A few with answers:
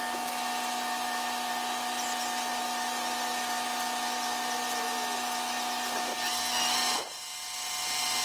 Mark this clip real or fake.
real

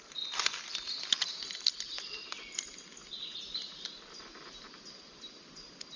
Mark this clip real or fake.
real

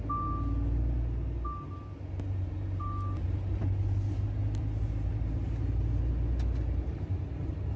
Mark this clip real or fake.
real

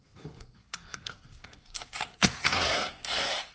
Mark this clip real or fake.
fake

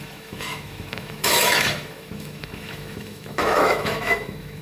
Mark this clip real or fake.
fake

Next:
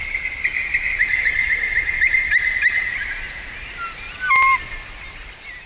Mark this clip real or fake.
real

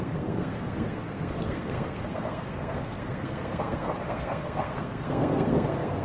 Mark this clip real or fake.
fake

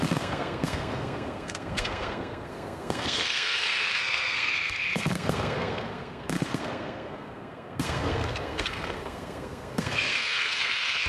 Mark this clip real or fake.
fake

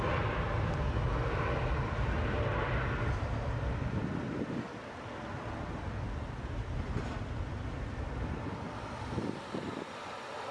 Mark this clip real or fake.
real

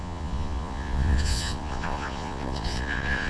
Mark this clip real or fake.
fake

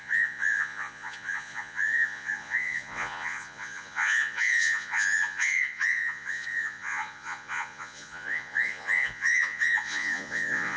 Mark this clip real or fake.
fake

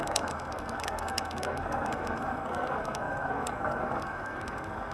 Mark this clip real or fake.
fake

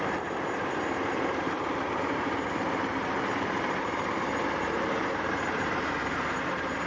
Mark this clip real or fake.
fake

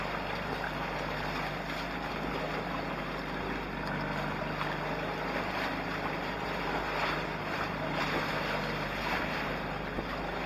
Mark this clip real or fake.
real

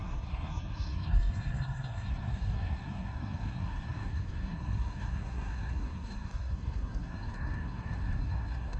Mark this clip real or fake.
fake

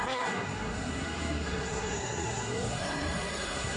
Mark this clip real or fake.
fake